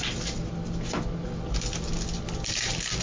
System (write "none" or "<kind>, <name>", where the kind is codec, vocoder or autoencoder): none